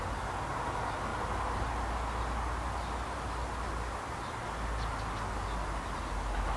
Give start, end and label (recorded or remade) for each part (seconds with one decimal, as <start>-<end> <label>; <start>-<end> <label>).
0.0-6.6 recorded